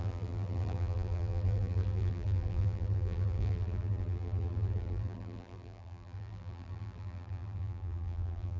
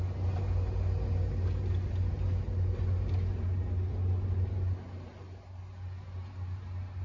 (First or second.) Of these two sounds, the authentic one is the second